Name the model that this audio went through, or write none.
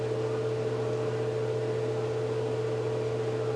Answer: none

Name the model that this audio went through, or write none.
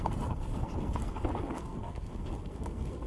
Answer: codec, SNAC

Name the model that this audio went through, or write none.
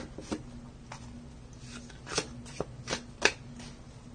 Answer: none